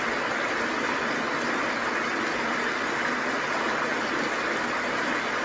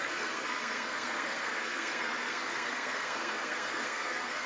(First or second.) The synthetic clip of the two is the second